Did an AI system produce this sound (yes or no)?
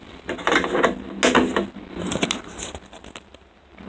no